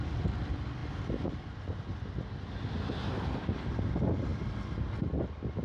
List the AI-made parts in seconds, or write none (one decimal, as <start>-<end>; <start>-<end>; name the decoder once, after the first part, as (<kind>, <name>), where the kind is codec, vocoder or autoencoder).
none